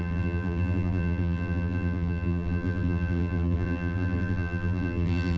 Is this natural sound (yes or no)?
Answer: no